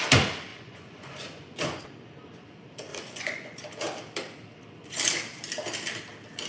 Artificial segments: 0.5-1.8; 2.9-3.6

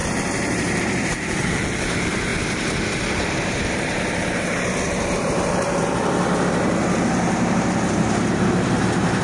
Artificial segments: 0.0-2.3; 3.1-9.2

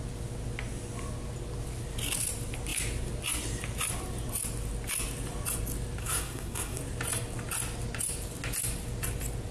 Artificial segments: 6.0-6.8